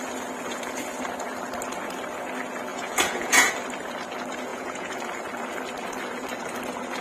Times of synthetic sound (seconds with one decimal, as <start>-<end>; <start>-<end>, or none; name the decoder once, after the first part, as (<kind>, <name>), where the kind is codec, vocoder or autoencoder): 2.7-3.5 (vocoder, Vocos); 4.5-5.0